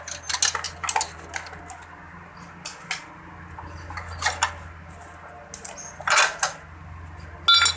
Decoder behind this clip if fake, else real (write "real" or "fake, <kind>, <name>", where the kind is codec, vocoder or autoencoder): real